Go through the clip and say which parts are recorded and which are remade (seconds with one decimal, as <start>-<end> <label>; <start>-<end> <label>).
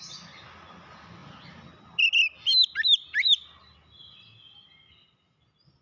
0.0-5.8 recorded